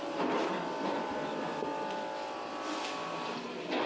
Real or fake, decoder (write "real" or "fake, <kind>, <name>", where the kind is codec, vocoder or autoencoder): real